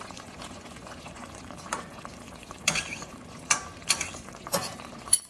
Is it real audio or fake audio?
fake